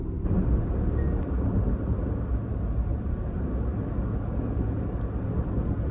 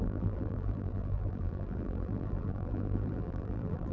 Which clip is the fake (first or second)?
second